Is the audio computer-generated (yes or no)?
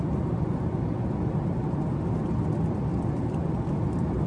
no